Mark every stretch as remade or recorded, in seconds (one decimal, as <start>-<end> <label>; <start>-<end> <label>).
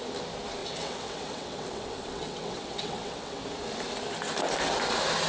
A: 0.0-0.6 recorded; 0.6-3.4 remade; 3.4-5.3 recorded